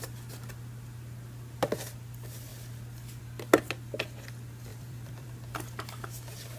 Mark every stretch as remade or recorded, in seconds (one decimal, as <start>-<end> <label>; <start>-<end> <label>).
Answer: 0.0-4.7 recorded; 4.7-5.8 remade; 5.8-6.6 recorded